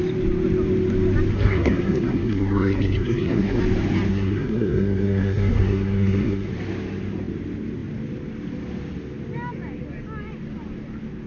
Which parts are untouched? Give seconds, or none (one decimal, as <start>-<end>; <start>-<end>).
0.0-1.3; 3.6-4.1; 6.5-11.3